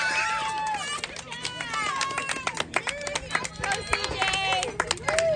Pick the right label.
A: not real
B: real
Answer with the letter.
B